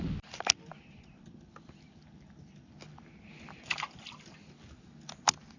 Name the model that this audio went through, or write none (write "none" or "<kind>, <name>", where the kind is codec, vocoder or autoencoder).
none